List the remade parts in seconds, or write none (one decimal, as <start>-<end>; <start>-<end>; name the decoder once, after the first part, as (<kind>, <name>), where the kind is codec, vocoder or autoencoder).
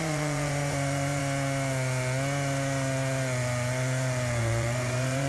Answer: 0.0-1.2 (vocoder, Vocos); 4.4-5.3